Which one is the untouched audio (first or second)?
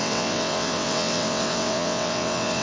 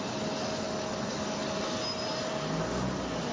second